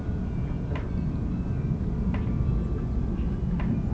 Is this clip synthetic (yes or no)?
no